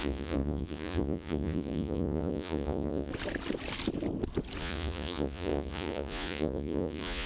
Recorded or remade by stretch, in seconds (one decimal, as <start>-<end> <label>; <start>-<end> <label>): 0.0-3.1 remade; 3.1-4.6 recorded; 4.6-7.3 remade